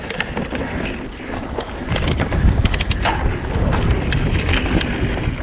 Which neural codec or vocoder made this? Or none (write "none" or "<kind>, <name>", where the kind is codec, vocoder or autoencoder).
none